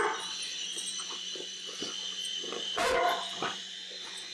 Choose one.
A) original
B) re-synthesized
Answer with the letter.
B